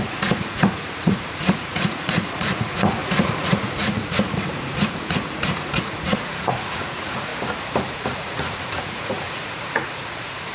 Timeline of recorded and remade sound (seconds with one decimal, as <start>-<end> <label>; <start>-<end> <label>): 0.0-7.3 remade; 7.3-7.9 recorded; 7.9-10.5 remade